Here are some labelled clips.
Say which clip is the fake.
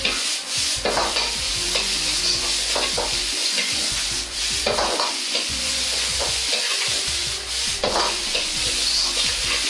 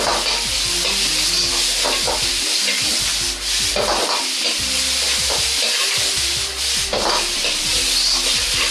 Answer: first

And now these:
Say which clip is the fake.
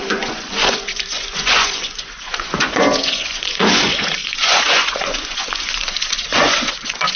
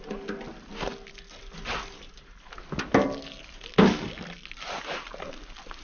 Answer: first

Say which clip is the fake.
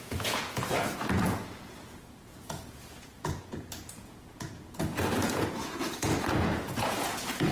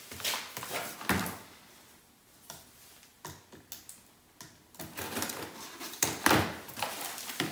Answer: first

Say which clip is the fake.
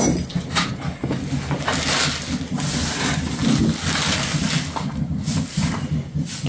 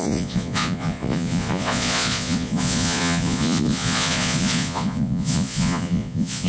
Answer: second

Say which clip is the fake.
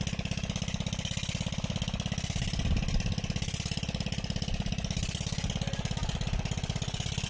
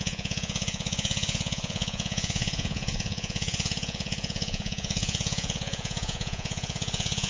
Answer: second